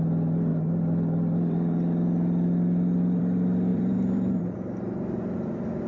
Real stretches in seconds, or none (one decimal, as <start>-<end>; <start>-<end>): 0.0-3.7; 4.4-5.9

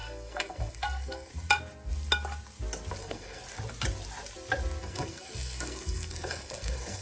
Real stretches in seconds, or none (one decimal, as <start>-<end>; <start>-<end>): 1.3-3.0; 3.4-4.8

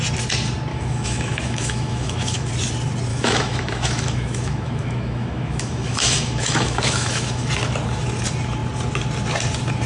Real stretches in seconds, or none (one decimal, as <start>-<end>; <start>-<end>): 0.0-0.7; 2.5-3.1; 7.5-9.9

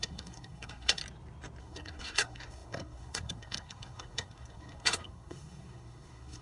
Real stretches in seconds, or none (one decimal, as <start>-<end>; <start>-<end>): 1.0-1.6